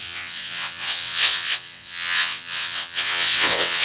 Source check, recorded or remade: remade